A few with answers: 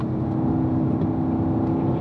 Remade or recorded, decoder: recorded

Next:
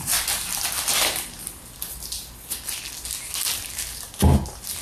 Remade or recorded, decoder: recorded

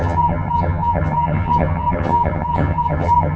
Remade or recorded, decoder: remade, vocoder, HiFi-GAN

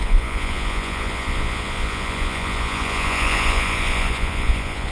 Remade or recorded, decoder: remade, vocoder, Vocos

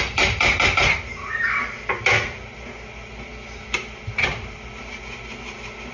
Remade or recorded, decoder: recorded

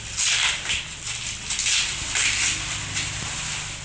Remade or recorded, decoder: recorded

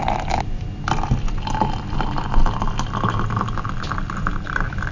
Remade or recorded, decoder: recorded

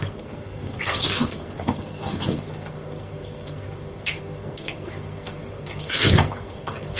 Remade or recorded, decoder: remade, codec, SNAC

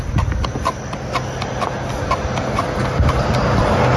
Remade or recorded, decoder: recorded